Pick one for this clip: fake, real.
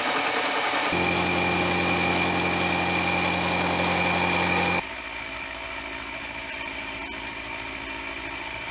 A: real